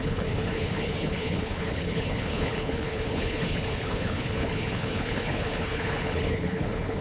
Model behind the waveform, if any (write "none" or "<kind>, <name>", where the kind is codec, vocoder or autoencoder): codec, HILCodec